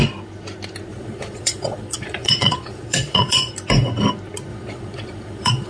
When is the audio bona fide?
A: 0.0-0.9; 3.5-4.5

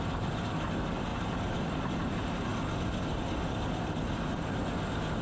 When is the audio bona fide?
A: 0.0-1.1; 1.7-5.2